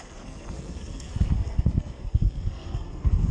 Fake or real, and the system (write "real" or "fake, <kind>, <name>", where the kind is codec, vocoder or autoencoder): fake, codec, SNAC